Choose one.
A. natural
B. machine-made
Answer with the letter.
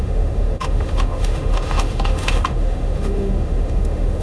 B